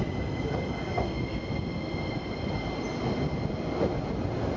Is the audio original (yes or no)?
yes